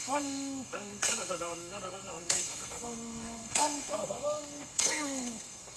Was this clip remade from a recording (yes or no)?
yes